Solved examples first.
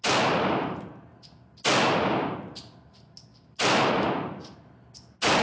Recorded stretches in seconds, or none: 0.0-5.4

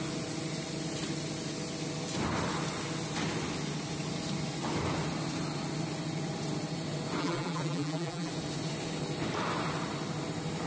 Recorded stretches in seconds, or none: 0.0-7.2; 8.3-10.7

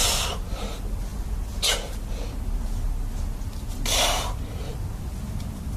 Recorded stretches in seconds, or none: 0.7-5.8

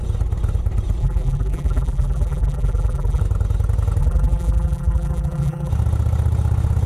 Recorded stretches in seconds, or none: 0.0-1.0; 3.2-4.0; 5.7-6.9

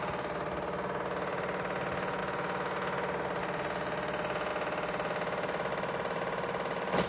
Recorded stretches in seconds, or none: 0.0-7.1

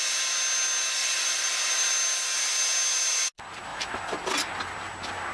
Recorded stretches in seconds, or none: 0.0-1.0; 1.9-3.7; 4.7-5.3

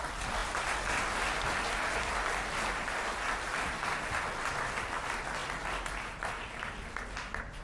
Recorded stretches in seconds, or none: 0.4-3.7; 5.4-7.6